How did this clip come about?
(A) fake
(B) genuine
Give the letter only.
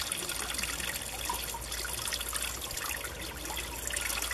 B